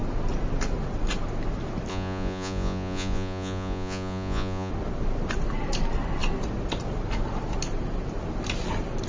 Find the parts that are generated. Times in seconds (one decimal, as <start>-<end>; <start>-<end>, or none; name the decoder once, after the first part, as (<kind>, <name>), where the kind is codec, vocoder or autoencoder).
1.9-4.7 (vocoder, Vocos)